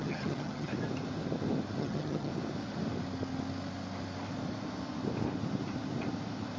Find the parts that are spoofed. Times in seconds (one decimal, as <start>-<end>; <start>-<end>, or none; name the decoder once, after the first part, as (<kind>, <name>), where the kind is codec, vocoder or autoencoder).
0.0-0.7 (vocoder, HiFi-GAN); 1.8-2.3